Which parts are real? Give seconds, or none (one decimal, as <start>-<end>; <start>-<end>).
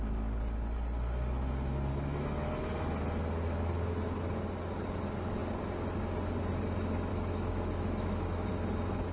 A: 0.0-1.9; 2.5-7.1; 8.5-9.1